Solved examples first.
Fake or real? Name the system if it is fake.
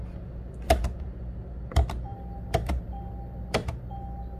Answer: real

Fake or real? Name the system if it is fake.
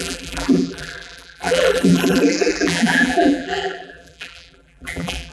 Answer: fake, vocoder, BigVGAN v2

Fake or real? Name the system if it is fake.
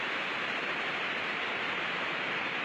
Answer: fake, vocoder, BigVGAN v2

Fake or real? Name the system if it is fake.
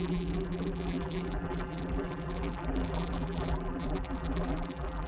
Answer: fake, vocoder, BigVGAN v2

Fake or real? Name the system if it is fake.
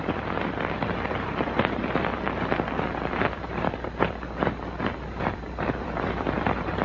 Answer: fake, vocoder, BigVGAN v2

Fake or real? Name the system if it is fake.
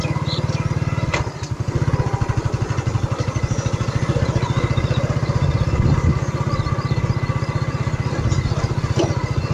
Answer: real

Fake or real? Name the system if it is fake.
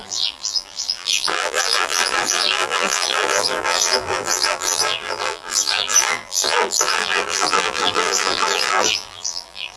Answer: fake, vocoder, BigVGAN v2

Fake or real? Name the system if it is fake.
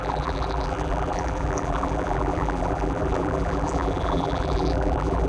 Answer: fake, vocoder, BigVGAN v2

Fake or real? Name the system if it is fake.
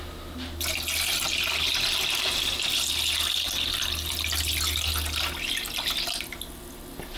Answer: real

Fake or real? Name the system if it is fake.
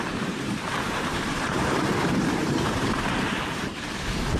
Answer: fake, vocoder, BigVGAN v2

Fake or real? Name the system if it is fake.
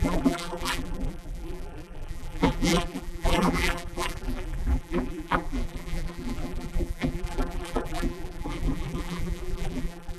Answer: fake, vocoder, BigVGAN v2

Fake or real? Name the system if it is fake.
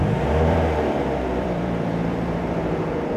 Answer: fake, vocoder, BigVGAN v2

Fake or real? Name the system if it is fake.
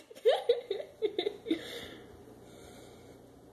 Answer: real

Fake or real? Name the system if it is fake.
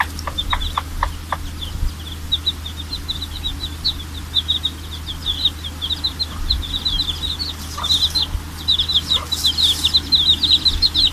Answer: real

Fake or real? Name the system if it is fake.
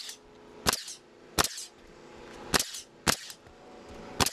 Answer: real